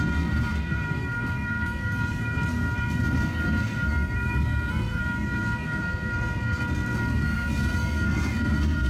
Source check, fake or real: fake